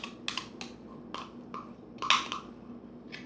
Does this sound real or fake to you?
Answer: real